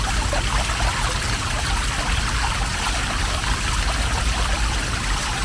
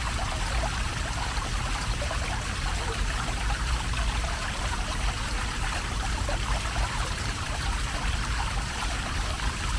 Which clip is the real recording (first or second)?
first